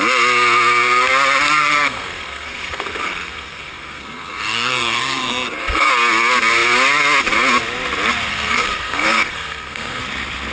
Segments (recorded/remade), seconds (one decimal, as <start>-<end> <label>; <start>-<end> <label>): 0.0-1.6 recorded; 1.6-5.9 remade; 5.9-8.3 recorded; 8.3-10.0 remade; 10.0-10.5 recorded